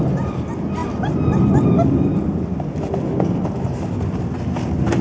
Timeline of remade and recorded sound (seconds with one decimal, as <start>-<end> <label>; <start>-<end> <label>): 0.0-5.0 recorded